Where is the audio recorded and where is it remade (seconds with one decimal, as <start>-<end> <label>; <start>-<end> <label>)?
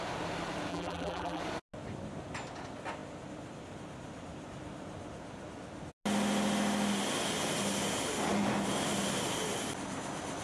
0.0-0.7 recorded; 0.7-1.4 remade; 1.4-10.4 recorded